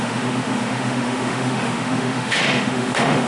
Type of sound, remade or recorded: remade